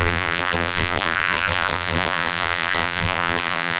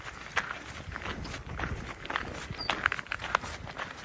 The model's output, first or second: first